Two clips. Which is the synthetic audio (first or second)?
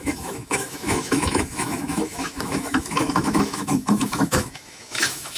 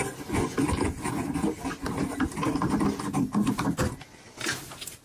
first